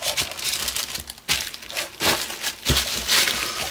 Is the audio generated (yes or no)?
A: no